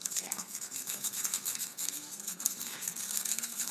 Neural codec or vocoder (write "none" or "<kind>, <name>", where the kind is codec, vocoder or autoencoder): codec, SNAC